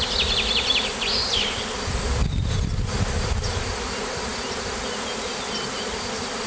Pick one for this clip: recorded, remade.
recorded